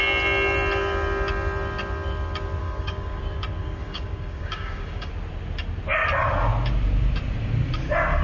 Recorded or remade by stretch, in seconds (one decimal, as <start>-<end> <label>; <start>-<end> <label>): 0.0-2.6 recorded; 2.6-3.2 remade; 3.2-3.6 recorded; 3.6-5.1 remade; 5.1-8.2 recorded